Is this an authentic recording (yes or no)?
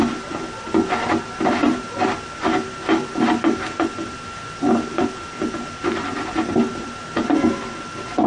yes